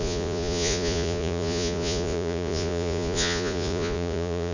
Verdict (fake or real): fake